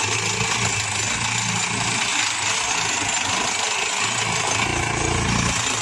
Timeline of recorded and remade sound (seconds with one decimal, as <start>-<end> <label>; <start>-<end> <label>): 0.0-5.8 recorded